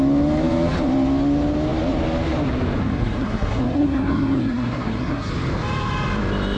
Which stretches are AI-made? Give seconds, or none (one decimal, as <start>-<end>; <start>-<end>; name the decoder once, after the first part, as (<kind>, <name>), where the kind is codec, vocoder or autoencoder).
2.8-5.3 (codec, SNAC)

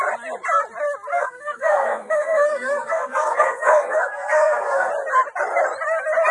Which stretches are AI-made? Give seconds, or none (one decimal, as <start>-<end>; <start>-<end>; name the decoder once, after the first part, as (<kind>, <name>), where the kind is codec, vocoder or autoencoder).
1.1-4.9 (codec, SNAC)

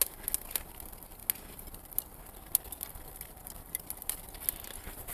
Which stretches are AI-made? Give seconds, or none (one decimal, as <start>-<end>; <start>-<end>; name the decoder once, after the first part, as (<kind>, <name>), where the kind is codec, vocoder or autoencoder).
none

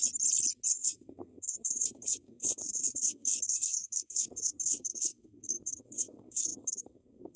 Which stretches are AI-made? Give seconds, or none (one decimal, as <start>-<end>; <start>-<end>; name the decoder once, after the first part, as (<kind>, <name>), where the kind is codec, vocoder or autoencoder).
0.7-7.4 (codec, SNAC)